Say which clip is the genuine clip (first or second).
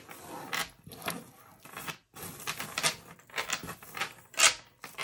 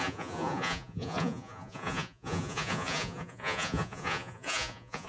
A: first